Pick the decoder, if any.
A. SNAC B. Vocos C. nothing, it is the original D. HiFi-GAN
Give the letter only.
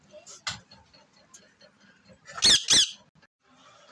C